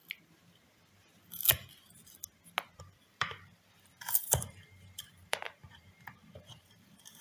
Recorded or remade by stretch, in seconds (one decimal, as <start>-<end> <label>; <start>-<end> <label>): 0.0-2.8 recorded; 2.8-7.2 remade